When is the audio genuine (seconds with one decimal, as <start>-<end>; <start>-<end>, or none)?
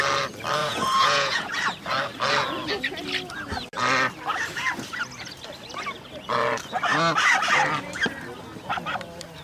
0.0-0.6; 1.5-9.4